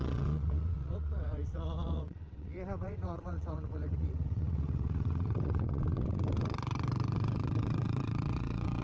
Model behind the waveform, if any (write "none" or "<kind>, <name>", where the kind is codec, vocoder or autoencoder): vocoder, WaveNeXt